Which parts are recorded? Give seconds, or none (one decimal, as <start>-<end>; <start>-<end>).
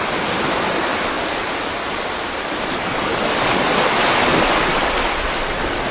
0.0-5.9